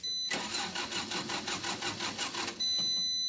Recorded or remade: recorded